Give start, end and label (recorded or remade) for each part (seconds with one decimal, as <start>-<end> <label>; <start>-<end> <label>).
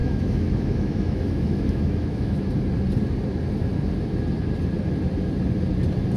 0.0-2.5 remade; 2.5-6.2 recorded